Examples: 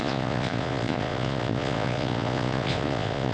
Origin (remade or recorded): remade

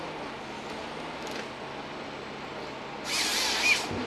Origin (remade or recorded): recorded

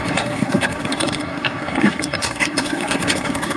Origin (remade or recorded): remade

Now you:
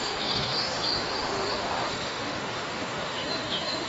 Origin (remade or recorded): remade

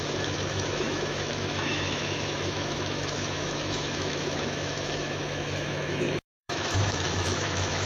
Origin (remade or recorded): remade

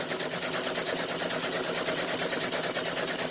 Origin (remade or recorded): recorded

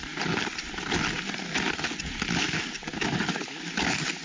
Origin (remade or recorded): recorded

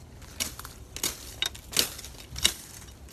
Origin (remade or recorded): recorded